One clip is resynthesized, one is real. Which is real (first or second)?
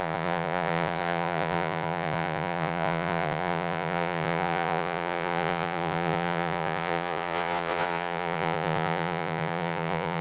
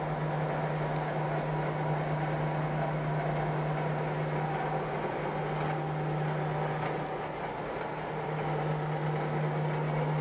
second